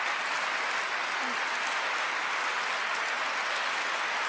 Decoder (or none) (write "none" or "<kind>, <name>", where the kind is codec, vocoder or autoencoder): none